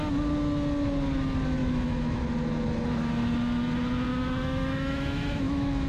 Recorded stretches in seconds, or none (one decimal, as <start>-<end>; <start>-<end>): 0.0-1.6; 2.2-4.1